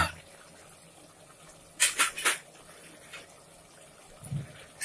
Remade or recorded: recorded